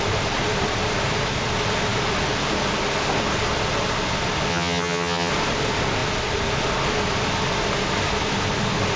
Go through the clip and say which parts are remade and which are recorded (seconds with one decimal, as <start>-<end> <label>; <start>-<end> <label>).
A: 0.0-4.5 recorded; 4.5-5.3 remade; 5.3-9.0 recorded